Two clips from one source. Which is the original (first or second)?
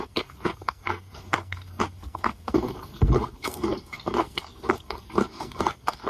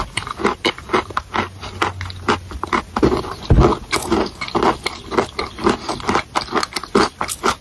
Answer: second